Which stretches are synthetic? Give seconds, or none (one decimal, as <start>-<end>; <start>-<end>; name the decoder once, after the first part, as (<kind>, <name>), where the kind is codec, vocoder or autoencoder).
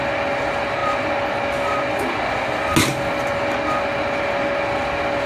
none